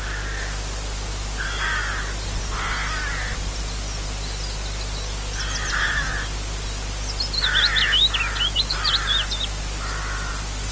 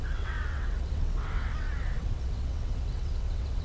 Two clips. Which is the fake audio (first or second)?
second